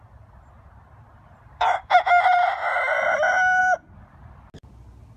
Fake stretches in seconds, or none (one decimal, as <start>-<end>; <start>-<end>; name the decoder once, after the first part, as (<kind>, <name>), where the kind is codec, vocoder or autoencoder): 1.3-2.9 (vocoder, BigVGAN v2)